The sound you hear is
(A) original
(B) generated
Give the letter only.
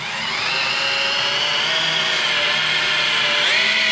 A